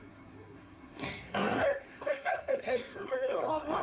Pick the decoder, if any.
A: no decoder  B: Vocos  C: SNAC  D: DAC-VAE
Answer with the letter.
C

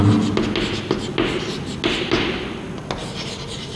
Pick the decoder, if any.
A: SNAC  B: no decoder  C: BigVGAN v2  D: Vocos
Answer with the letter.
B